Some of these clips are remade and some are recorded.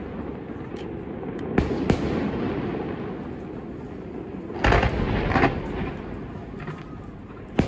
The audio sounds recorded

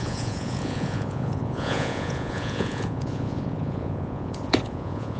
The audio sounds remade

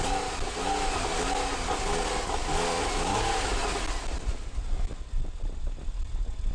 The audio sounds recorded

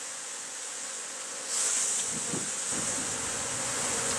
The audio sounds remade